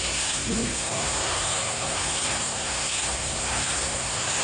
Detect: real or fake fake